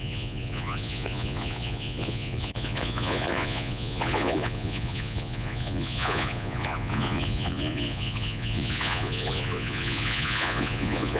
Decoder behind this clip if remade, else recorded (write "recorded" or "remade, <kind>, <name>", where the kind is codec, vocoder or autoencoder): remade, vocoder, Vocos